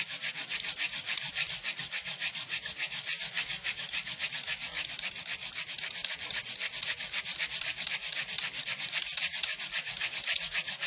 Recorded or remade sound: recorded